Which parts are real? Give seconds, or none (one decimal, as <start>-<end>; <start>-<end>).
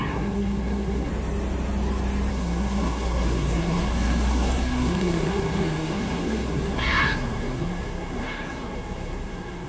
1.1-2.3